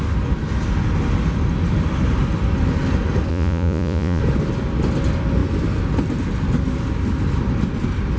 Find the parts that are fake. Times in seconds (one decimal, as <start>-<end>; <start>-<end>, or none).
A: 3.3-4.2